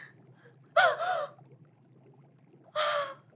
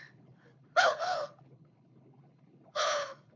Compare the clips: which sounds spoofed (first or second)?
second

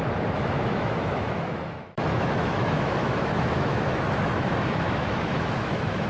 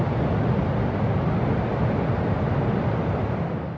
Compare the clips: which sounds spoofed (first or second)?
first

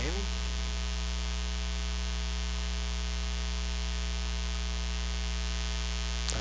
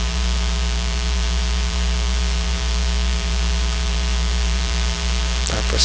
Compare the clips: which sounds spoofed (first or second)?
second